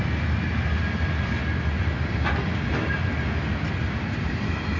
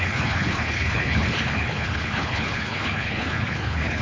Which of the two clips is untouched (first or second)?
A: first